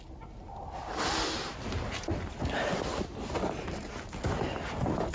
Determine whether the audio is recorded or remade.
recorded